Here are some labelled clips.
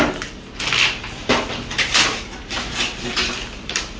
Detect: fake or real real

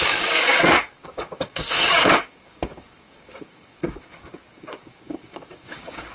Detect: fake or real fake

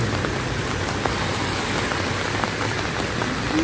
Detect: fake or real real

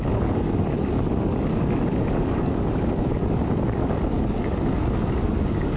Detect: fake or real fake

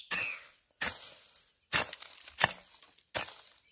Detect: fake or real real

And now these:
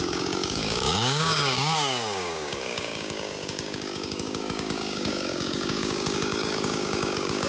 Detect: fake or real fake